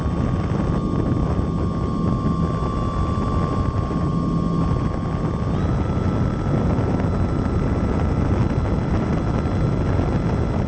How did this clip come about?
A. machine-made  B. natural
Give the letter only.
B